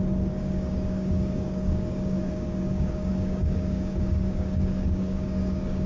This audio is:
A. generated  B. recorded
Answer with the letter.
A